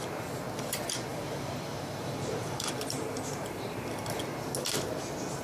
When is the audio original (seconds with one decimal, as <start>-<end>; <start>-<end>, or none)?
0.0-1.1; 4.2-5.4

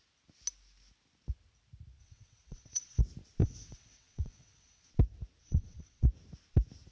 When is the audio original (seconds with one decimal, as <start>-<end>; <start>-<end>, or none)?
0.0-2.0; 3.0-3.4; 4.9-5.4; 6.0-6.9

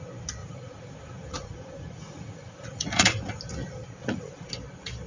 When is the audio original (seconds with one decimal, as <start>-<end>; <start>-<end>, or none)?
0.0-0.4; 3.4-4.0; 4.5-5.1

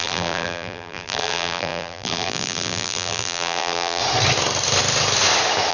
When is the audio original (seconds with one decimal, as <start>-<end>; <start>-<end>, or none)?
4.0-5.7

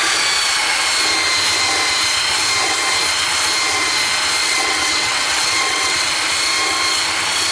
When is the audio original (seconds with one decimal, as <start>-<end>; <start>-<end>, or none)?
0.0-4.4; 6.1-7.5